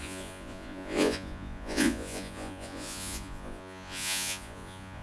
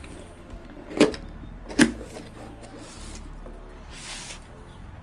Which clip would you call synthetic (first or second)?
first